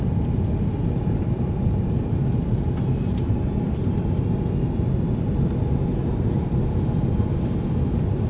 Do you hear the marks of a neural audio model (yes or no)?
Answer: no